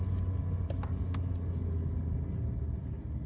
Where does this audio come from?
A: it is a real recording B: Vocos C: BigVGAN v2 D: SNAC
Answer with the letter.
A